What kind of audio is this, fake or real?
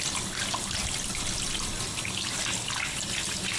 real